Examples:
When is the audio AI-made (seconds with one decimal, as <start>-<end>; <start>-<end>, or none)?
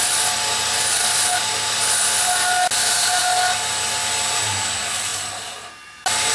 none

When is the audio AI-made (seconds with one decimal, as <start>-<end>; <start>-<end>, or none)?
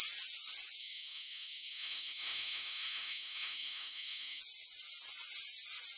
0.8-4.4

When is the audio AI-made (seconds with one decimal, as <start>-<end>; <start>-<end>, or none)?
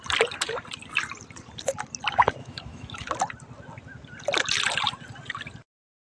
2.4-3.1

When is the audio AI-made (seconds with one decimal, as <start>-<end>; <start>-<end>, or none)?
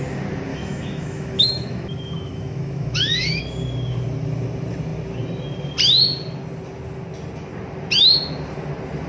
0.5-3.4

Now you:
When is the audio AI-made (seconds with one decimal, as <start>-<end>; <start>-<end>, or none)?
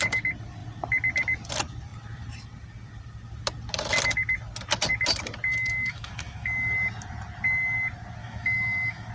5.5-6.7; 8.2-9.1